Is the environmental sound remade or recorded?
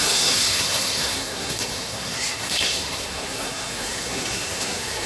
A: remade